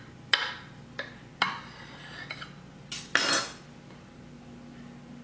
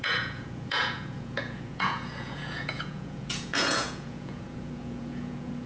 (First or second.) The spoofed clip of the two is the second